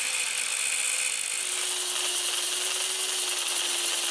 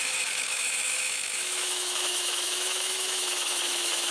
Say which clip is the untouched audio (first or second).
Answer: first